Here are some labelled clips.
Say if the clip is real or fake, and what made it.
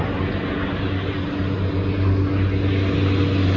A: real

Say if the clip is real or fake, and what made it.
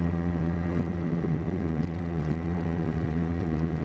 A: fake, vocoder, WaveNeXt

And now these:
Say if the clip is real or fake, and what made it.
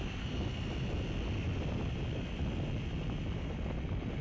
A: real